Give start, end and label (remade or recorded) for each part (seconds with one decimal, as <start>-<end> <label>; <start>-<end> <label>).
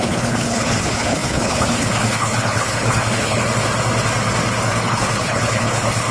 0.0-3.4 remade; 3.4-4.8 recorded; 4.8-6.1 remade